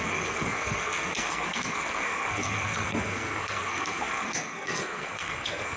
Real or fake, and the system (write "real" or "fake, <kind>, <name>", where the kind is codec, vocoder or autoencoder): fake, codec, SNAC